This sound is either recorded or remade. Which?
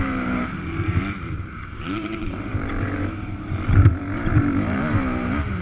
remade